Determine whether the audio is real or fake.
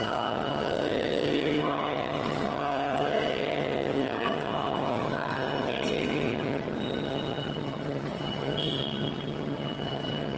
fake